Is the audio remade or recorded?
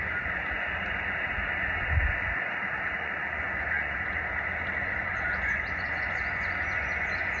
remade